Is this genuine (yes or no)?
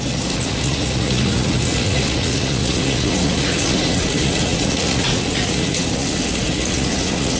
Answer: no